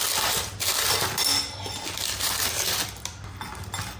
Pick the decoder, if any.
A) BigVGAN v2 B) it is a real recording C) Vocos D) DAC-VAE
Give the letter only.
B